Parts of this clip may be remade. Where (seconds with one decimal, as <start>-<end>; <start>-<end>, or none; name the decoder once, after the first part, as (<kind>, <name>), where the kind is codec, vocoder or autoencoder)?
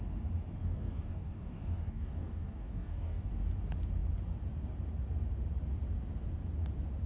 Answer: 0.6-3.3 (codec, DAC)